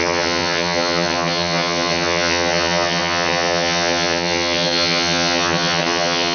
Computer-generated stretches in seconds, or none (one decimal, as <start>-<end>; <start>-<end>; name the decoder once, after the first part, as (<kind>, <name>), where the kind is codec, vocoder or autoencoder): 0.0-6.3 (vocoder, HiFi-GAN)